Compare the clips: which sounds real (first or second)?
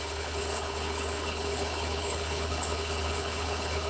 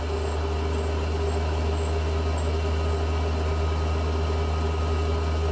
second